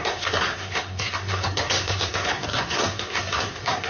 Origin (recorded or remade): remade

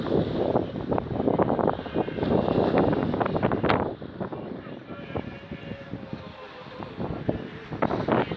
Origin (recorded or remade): recorded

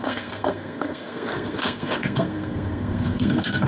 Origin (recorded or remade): remade